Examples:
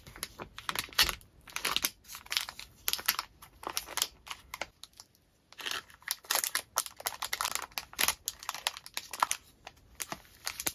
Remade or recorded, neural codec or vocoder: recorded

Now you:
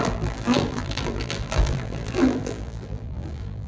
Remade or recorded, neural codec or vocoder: remade, vocoder, BigVGAN v2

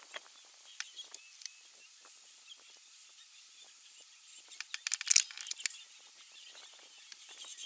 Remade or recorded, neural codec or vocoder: recorded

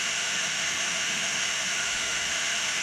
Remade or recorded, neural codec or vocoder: remade, autoencoder, DAC-VAE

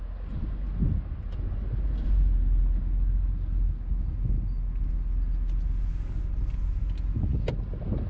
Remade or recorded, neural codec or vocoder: recorded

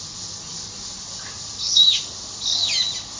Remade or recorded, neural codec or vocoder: recorded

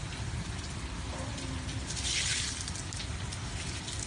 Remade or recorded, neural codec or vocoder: recorded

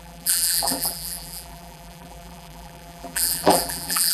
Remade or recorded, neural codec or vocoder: remade, vocoder, BigVGAN v2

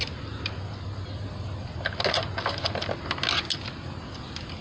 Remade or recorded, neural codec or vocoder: recorded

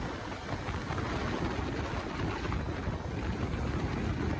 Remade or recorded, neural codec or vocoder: recorded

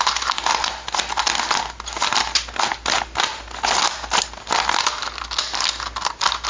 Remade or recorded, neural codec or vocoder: recorded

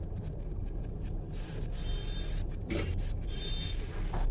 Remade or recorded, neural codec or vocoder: recorded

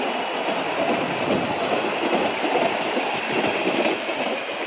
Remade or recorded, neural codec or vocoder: recorded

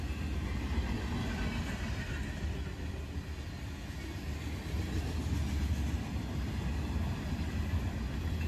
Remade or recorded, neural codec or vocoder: recorded